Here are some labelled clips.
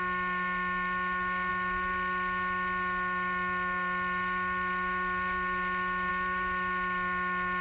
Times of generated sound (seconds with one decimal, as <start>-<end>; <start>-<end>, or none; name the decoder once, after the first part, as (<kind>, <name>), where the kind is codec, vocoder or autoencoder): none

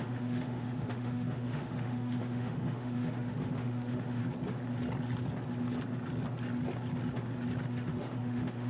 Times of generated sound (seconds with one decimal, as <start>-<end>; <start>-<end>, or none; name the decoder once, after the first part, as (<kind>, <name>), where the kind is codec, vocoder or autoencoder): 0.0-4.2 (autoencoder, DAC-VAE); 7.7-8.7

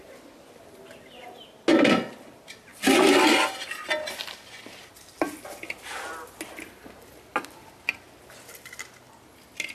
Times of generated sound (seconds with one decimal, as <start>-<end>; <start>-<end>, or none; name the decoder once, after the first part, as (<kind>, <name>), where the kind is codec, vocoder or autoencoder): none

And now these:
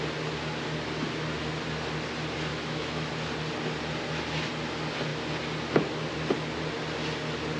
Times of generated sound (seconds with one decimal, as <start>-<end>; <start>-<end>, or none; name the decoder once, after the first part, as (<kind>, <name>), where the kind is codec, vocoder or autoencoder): 2.5-3.1 (autoencoder, DAC-VAE)